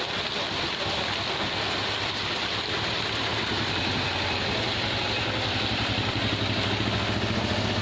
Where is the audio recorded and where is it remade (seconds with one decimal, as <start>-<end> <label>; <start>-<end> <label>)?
0.0-7.8 recorded